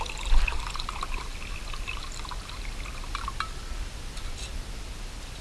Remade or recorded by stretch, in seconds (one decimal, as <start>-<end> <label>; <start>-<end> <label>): 0.0-5.4 recorded